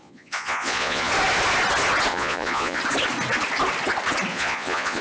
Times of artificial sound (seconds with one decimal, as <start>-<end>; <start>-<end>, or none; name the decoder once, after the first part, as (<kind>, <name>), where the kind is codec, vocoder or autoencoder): 0.0-1.1 (vocoder, Vocos); 2.1-2.8; 4.3-5.0